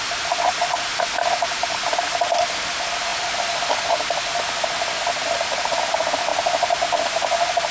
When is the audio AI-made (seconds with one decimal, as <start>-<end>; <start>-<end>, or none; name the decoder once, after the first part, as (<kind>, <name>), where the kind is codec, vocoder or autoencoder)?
3.1-3.9 (vocoder, BigVGAN v2)